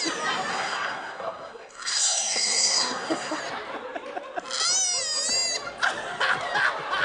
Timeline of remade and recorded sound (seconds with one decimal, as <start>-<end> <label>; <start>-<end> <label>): 0.0-0.5 recorded; 0.5-3.4 remade; 3.4-7.0 recorded